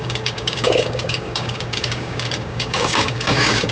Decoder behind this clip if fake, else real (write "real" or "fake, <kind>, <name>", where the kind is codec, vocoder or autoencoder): fake, codec, DAC